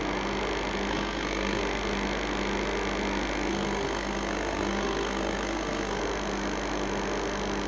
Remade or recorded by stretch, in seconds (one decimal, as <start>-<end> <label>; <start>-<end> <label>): 0.0-0.9 recorded; 0.9-1.6 remade; 1.6-3.5 recorded; 3.5-6.0 remade; 6.0-7.7 recorded